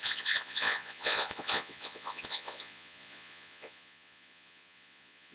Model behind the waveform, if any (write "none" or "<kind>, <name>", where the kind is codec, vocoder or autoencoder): vocoder, Vocos